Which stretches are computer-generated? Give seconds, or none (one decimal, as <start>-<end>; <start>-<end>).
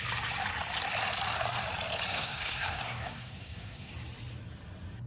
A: 2.1-3.9